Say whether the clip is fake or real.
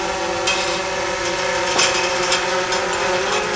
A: real